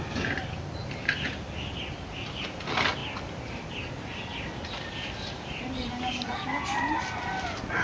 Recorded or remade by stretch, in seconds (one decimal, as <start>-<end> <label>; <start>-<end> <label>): 0.0-7.8 recorded